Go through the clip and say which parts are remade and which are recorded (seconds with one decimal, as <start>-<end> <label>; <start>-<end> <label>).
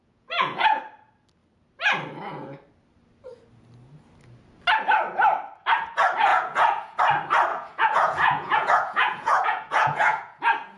0.0-0.8 remade; 0.8-6.3 recorded; 6.3-7.0 remade; 7.0-7.5 recorded; 7.5-10.4 remade; 10.4-10.8 recorded